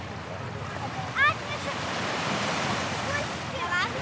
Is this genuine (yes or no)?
yes